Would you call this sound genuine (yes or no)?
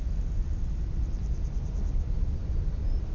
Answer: yes